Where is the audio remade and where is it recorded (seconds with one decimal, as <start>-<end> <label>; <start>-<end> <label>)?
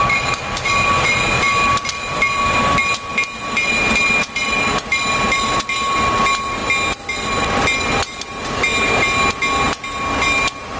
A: 0.0-10.8 recorded